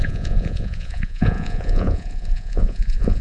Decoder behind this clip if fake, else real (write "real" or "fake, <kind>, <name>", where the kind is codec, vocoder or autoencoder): fake, vocoder, Vocos